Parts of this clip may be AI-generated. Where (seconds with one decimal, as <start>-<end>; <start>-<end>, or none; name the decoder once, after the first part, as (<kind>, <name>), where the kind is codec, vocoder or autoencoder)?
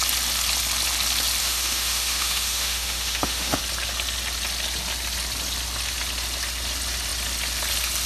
1.4-3.6 (autoencoder, DAC-VAE)